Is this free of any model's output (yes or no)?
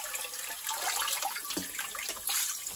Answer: yes